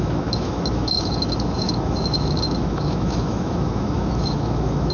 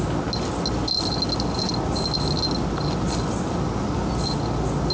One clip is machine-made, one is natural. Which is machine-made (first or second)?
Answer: first